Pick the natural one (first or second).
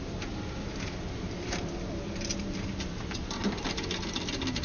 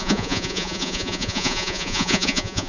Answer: first